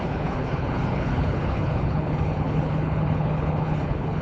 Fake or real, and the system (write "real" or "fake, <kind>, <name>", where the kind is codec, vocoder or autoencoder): fake, codec, HILCodec